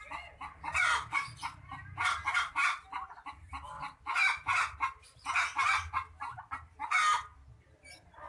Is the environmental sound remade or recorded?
recorded